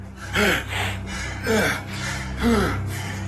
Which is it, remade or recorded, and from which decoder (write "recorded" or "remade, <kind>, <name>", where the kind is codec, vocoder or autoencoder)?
recorded